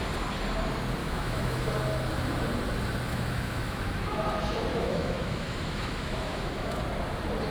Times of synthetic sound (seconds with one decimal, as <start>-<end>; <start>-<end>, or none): 1.0-1.7; 3.1-4.2; 4.7-6.8